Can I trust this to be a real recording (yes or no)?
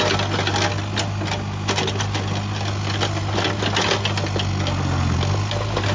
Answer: yes